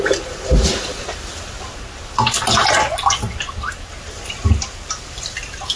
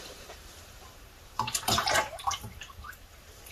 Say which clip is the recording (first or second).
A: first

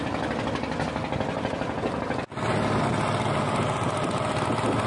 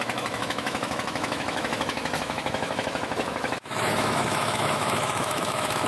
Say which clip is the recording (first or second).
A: first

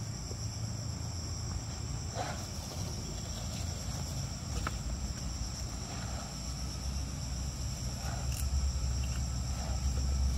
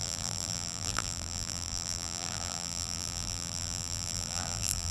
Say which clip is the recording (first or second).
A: first